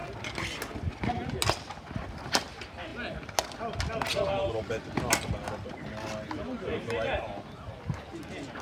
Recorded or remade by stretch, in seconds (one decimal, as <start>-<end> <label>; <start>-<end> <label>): 0.0-8.6 recorded